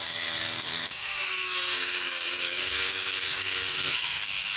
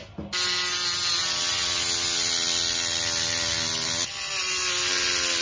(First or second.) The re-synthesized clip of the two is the first